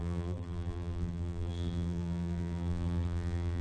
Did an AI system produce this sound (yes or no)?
yes